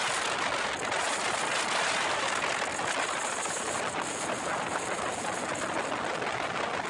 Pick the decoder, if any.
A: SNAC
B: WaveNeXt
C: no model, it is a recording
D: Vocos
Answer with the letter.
C